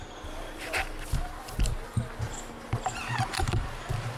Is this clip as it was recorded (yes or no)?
yes